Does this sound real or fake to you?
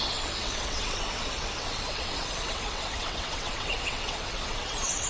fake